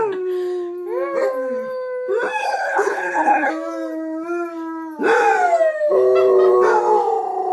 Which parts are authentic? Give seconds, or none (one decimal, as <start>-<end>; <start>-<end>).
0.0-2.4; 3.5-7.5